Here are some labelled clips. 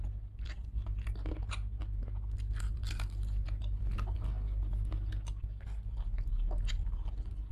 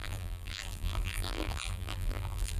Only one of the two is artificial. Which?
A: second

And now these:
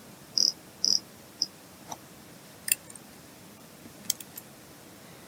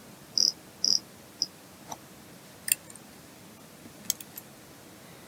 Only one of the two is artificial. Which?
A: first